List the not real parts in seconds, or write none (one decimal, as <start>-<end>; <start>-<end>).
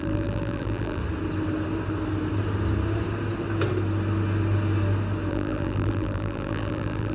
0.0-1.0; 5.3-7.1